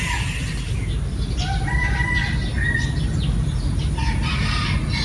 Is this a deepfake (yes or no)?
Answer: no